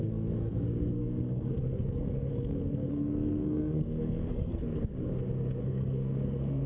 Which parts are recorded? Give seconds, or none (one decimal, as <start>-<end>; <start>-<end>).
5.1-5.6